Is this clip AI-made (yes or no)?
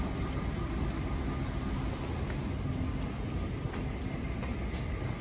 no